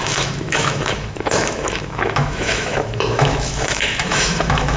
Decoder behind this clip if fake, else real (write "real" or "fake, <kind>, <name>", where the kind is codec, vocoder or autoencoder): fake, autoencoder, DAC-VAE